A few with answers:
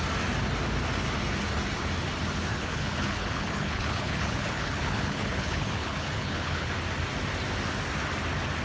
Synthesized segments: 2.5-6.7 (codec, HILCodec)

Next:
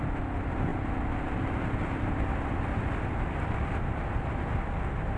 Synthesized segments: none

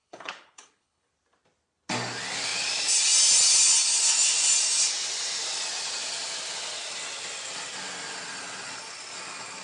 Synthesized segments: 0.0-1.1 (codec, HILCodec)

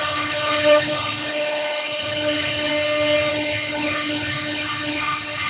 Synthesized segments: 0.0-2.7 (codec, HILCodec); 3.3-5.5

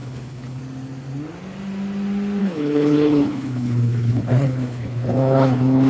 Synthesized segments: 0.0-0.6 (codec, HILCodec); 2.4-5.9

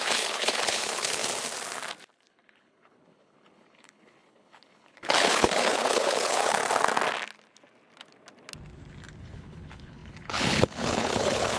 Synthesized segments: 0.0-1.2 (codec, HILCodec); 2.3-6.6; 9.2-11.6

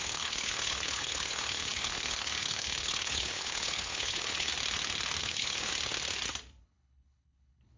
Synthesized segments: 0.0-4.5 (codec, HILCodec); 5.2-5.7; 6.6-7.8

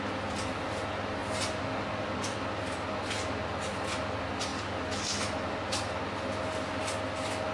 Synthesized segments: none